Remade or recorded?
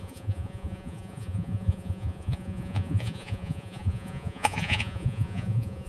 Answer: remade